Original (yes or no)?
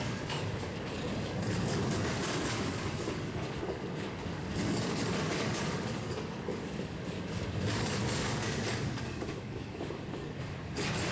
no